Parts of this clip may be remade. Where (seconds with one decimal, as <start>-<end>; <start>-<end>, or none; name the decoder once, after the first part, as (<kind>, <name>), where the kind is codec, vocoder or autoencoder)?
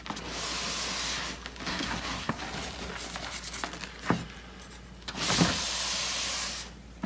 1.7-2.4 (codec, SNAC)